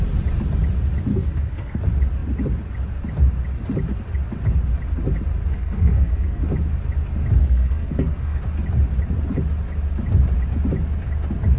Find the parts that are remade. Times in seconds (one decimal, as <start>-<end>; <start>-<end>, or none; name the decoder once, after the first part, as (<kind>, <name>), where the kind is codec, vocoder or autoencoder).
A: 1.1-1.8 (codec, SNAC); 5.5-6.4; 7.4-8.4